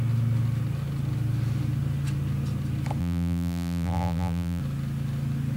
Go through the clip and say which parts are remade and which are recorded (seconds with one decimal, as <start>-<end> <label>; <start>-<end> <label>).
0.0-3.0 recorded; 3.0-4.6 remade; 4.6-5.6 recorded